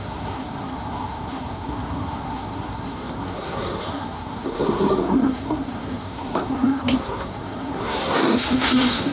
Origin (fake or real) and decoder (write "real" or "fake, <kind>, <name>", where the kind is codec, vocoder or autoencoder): fake, codec, SNAC